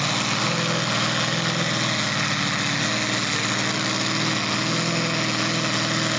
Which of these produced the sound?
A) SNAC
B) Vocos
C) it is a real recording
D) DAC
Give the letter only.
C